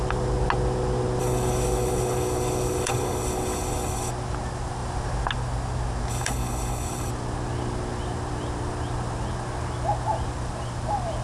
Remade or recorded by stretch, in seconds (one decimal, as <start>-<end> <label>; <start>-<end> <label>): 0.0-1.2 recorded; 1.2-4.1 remade; 4.1-6.1 recorded; 6.1-7.1 remade; 7.1-11.2 recorded